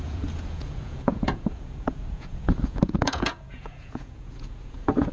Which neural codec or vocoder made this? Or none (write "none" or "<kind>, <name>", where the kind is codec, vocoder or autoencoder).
vocoder, Vocos